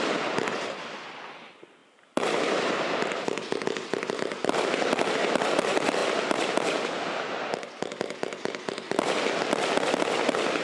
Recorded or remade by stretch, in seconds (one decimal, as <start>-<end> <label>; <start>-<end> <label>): 0.0-10.6 recorded